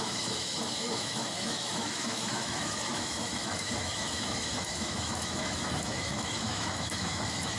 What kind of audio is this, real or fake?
fake